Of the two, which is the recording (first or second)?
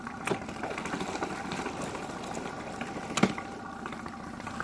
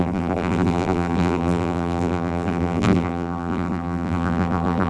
first